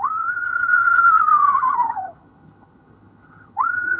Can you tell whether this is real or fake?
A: fake